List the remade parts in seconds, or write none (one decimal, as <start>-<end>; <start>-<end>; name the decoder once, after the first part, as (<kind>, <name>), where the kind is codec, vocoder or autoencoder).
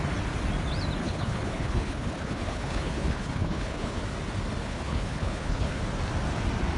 1.0-4.0 (codec, HILCodec); 4.6-5.8